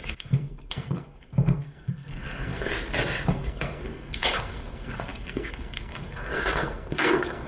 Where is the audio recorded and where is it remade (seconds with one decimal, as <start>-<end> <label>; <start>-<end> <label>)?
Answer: 0.0-2.7 remade; 2.7-3.3 recorded; 3.3-7.5 remade